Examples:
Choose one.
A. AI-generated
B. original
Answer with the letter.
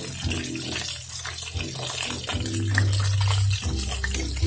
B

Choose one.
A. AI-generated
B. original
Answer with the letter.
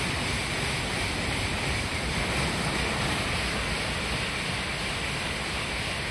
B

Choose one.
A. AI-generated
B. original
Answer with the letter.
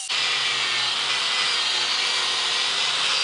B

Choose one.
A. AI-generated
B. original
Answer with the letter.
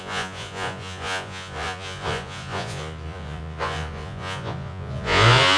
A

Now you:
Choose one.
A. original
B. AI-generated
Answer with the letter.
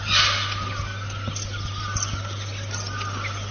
A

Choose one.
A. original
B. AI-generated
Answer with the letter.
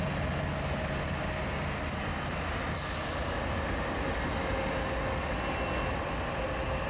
A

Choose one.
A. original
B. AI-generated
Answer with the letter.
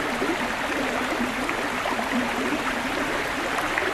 A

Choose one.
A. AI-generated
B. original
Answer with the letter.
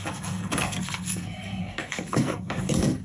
A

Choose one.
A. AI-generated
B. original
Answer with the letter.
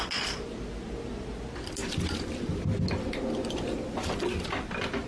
B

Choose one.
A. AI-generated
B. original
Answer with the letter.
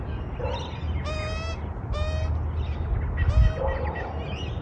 B